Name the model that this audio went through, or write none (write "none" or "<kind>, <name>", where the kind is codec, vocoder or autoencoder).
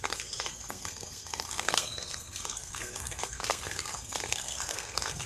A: codec, SNAC